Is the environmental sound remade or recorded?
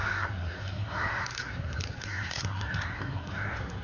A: remade